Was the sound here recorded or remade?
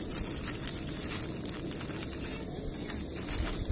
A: recorded